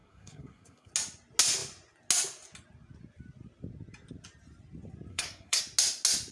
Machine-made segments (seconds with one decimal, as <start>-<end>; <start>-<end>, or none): 0.0-0.9; 5.1-5.6